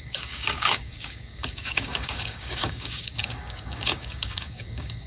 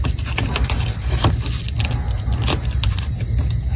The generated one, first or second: first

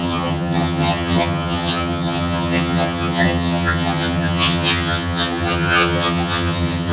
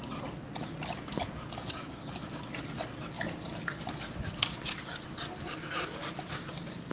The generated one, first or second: first